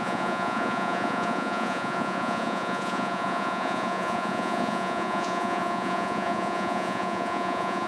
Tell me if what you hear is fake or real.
fake